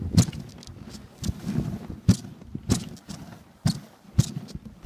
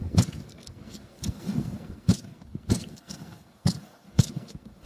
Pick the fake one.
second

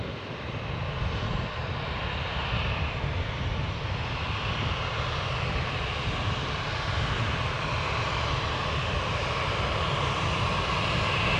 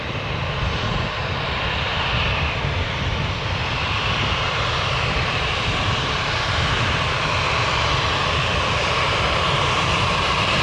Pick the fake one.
second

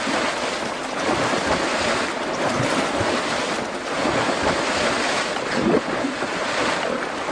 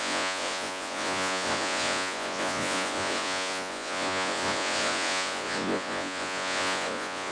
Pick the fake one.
second